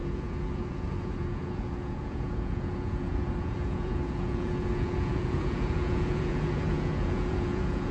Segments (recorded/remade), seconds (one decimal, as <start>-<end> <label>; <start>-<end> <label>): 0.0-7.9 remade